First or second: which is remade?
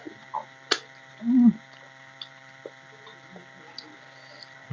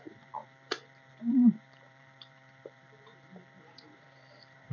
second